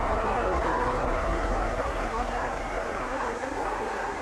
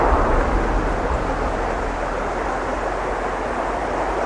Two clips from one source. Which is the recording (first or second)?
second